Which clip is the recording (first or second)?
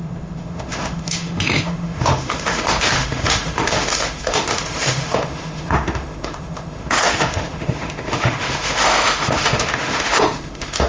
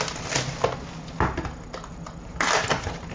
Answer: second